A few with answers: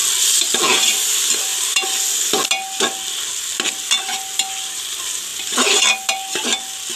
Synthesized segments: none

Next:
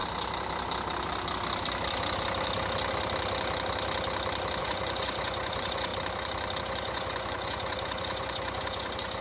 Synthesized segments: 4.6-5.9; 6.6-9.2

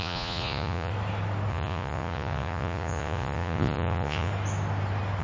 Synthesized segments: 0.0-0.9; 1.5-4.3